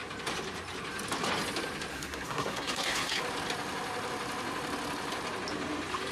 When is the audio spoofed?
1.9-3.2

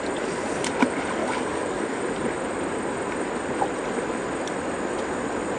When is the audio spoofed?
1.2-2.0

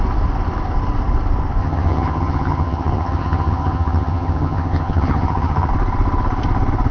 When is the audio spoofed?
1.6-5.7

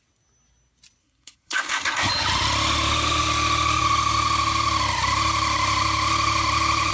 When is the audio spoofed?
1.0-2.1

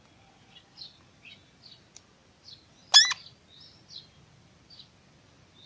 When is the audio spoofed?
none